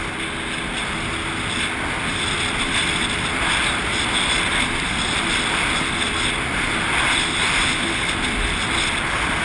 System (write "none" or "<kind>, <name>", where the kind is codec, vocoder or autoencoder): none